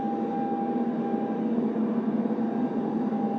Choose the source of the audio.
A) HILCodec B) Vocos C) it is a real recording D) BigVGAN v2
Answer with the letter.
C